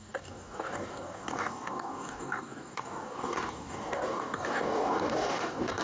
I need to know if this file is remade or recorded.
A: remade